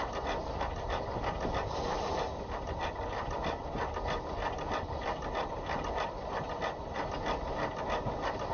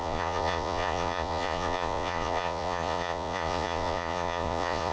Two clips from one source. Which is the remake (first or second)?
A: second